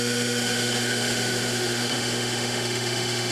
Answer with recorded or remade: remade